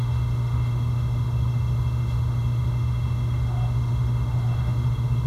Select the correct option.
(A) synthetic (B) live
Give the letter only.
A